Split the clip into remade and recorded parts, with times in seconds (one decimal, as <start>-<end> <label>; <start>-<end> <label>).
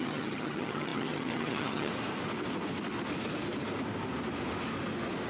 0.0-1.9 remade; 1.9-5.3 recorded